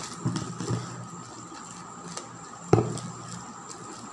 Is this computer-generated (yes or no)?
no